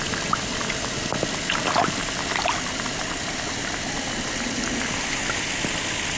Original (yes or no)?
yes